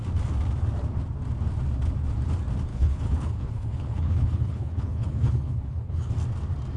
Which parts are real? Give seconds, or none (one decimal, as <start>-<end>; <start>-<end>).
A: 0.0-2.7; 6.1-6.8